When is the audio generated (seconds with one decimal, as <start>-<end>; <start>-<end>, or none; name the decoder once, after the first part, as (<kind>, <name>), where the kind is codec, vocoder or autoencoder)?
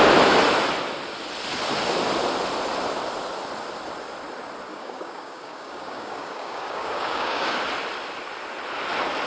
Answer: 4.7-7.6 (codec, DAC)